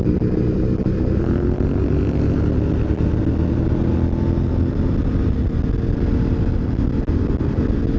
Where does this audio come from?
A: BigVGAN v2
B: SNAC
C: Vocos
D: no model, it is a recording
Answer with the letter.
D